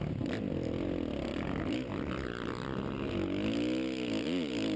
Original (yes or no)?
yes